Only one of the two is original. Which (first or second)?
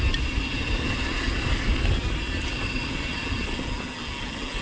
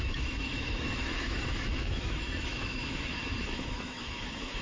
first